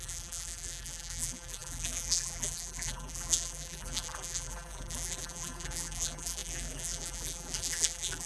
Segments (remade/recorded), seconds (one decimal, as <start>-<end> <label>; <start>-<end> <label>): 0.0-8.3 remade